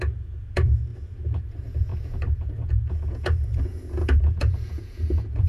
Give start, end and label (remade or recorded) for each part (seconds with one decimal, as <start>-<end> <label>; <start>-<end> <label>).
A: 0.0-0.9 remade; 0.9-1.4 recorded; 1.4-5.5 remade